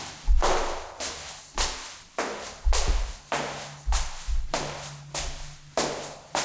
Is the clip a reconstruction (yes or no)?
no